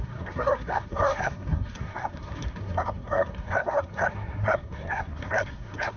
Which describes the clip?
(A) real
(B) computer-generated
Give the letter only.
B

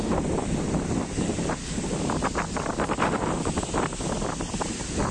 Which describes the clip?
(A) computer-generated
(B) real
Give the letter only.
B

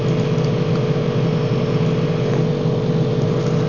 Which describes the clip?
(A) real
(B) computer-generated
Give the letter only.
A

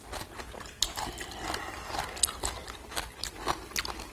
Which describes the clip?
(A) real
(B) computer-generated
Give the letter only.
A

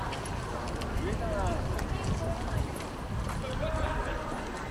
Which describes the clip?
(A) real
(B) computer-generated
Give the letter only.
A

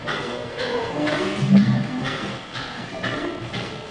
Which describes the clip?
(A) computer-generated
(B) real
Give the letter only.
A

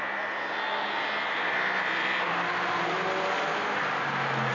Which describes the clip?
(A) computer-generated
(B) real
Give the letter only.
B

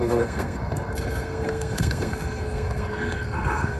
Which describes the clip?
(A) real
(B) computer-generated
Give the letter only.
B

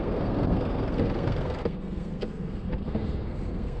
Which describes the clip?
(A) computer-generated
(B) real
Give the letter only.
A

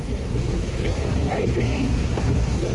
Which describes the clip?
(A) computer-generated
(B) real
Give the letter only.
A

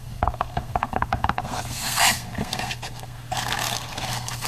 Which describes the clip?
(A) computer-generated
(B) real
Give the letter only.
A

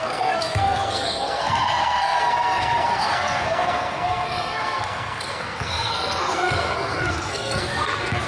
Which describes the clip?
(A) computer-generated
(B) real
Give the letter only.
A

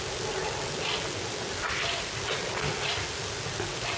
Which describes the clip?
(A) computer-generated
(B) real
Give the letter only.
B